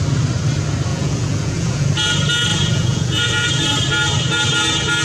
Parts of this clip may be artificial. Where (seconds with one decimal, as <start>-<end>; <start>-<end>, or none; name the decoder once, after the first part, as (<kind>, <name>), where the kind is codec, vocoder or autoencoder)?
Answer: 0.9-1.9 (vocoder, Vocos); 2.5-3.6